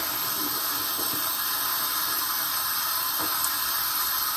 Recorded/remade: recorded